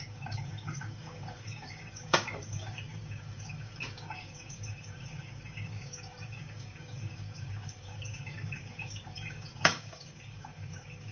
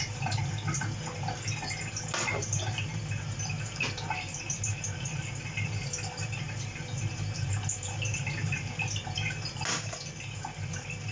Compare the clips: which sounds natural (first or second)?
second